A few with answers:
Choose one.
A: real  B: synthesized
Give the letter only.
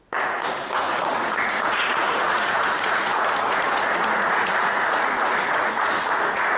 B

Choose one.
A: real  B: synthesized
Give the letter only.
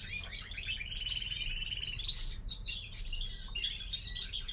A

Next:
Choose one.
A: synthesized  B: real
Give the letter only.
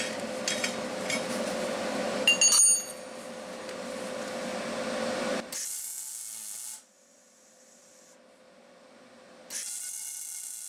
B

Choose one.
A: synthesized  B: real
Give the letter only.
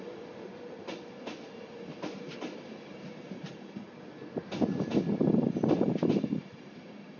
B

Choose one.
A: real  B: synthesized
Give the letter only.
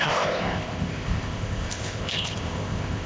B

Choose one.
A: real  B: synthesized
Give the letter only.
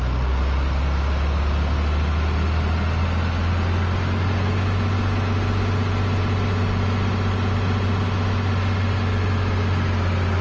A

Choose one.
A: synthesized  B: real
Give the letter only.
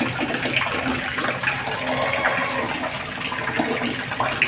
B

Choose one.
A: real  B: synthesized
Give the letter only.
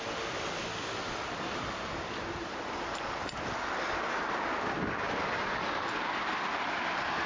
A